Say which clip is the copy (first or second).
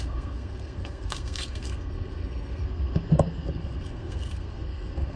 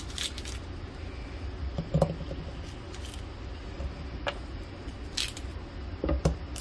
first